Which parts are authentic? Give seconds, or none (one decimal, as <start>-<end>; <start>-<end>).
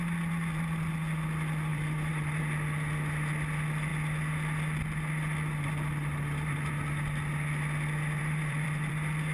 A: 0.0-1.7; 2.4-8.2; 8.9-9.3